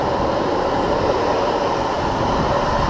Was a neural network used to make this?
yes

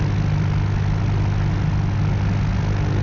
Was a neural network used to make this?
no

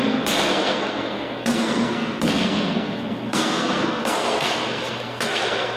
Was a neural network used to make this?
yes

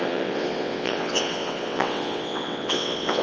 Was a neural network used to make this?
yes